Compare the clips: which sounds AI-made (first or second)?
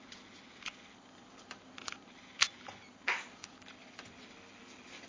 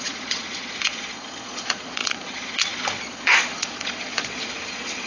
second